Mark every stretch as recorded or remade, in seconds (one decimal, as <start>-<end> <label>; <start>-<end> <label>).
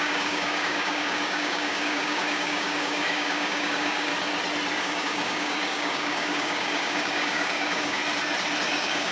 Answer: 0.0-4.1 remade; 4.1-4.8 recorded; 4.8-8.0 remade; 8.0-8.7 recorded; 8.7-9.1 remade